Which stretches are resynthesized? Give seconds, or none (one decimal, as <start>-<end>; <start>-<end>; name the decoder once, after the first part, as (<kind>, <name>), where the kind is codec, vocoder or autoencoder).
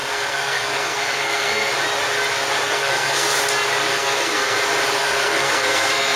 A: 0.0-1.7 (codec, SNAC); 2.6-3.4; 3.9-4.6; 5.0-6.2